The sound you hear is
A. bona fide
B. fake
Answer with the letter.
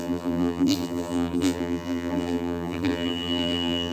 B